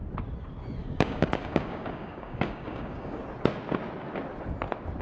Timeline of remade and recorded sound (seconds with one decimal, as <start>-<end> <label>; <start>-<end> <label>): 0.0-0.8 recorded; 0.8-3.2 remade; 3.2-5.0 recorded